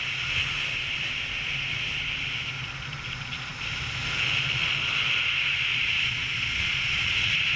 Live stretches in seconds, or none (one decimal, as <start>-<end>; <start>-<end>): 0.0-5.7